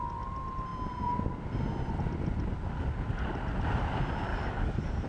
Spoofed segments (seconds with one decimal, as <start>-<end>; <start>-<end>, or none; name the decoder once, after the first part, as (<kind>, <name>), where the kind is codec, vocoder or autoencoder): 4.3-5.1 (codec, DAC)